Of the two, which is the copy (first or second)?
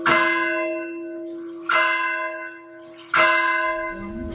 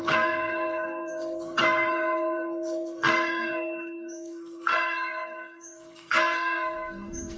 second